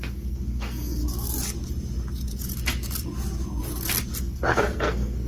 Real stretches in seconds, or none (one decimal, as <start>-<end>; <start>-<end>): 1.0-4.2